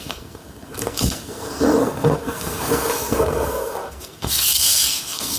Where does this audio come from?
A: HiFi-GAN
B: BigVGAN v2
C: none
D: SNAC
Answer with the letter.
D